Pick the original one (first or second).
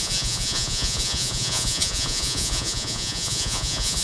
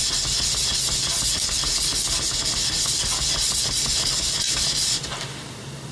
second